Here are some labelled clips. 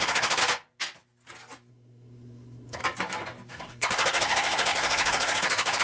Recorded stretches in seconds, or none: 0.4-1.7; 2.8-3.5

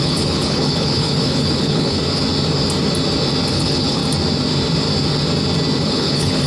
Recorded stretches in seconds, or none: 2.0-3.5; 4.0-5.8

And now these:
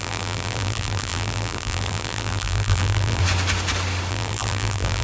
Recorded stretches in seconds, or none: 3.2-4.1